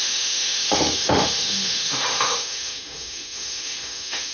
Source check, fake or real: fake